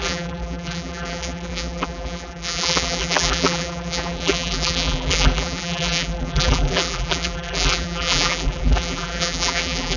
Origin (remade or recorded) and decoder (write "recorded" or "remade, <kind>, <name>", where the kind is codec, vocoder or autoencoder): remade, vocoder, BigVGAN v2